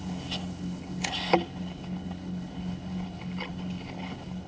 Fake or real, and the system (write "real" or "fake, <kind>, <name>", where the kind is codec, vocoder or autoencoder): fake, codec, HILCodec